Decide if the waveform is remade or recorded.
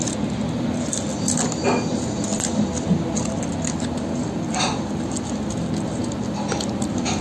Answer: recorded